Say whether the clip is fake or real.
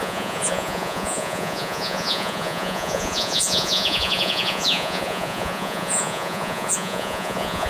fake